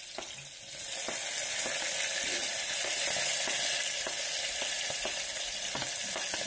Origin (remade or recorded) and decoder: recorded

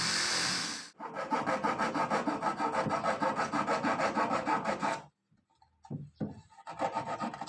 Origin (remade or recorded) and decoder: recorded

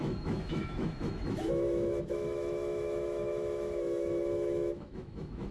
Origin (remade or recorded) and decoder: remade, autoencoder, DAC-VAE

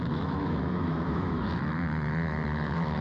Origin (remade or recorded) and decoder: remade, autoencoder, DAC-VAE